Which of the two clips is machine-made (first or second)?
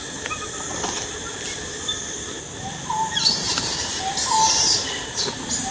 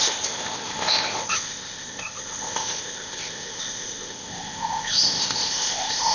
second